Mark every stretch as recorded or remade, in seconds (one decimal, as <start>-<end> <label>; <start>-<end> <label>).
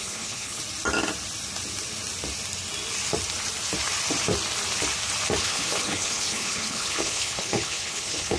0.0-0.6 remade; 0.6-5.4 recorded; 5.4-8.4 remade